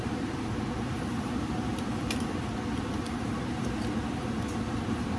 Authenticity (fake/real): fake